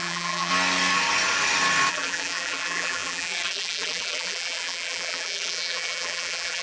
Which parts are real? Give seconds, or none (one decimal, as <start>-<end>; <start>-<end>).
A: 0.5-1.9